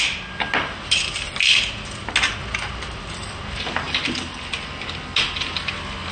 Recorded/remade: recorded